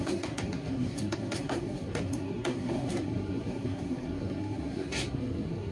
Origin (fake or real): fake